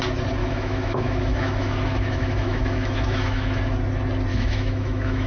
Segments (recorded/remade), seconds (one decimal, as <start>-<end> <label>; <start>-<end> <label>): 0.0-0.4 recorded; 0.4-3.6 remade; 3.6-4.3 recorded; 4.3-5.3 remade